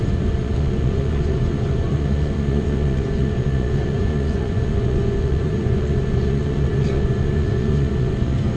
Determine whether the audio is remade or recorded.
remade